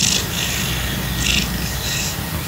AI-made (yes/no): no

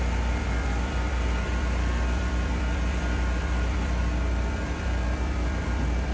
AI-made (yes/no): yes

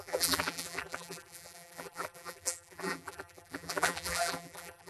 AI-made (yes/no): yes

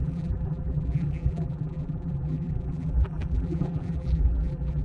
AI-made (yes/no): yes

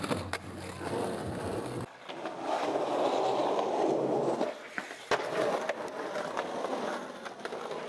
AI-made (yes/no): no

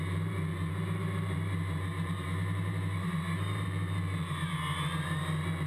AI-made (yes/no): yes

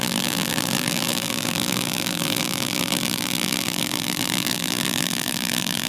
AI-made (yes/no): yes